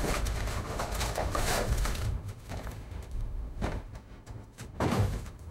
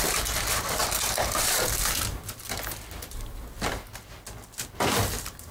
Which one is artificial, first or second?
first